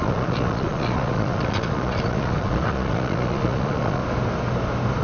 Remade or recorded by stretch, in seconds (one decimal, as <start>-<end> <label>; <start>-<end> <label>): 0.0-4.0 remade; 4.0-5.0 recorded